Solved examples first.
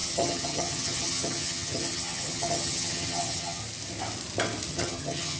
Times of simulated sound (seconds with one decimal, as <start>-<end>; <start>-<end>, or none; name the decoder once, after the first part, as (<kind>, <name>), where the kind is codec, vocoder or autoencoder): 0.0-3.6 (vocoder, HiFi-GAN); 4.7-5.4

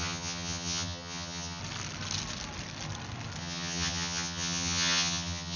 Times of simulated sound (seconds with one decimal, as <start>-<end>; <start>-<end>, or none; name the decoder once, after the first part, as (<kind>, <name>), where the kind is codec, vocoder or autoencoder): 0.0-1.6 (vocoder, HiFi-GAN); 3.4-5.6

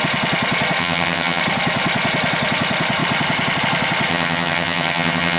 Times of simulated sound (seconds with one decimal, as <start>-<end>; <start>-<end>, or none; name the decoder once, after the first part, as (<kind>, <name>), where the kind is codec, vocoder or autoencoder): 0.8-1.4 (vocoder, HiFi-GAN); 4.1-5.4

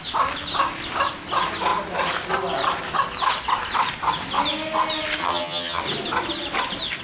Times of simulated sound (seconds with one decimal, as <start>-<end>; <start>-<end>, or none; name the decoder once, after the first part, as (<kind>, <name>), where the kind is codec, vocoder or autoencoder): 5.2-5.8 (vocoder, HiFi-GAN)